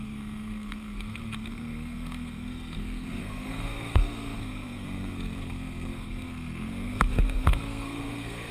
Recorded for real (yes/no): no